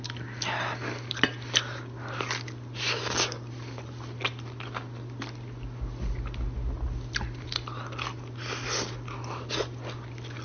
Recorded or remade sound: recorded